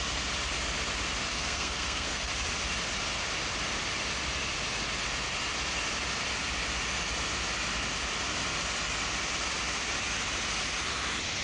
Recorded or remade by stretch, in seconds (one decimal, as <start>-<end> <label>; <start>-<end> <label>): 0.0-1.3 recorded; 1.3-2.3 remade; 2.3-11.4 recorded